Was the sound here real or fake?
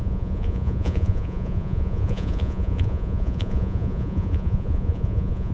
fake